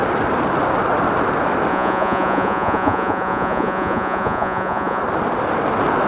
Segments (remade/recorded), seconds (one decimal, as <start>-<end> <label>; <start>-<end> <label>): 0.0-1.7 recorded; 1.7-5.0 remade; 5.0-6.1 recorded